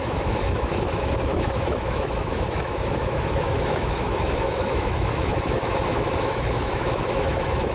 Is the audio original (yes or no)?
no